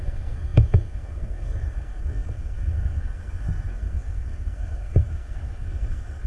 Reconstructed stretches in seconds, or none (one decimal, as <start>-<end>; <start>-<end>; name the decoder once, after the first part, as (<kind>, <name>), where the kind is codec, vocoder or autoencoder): 0.0-6.3 (codec, SNAC)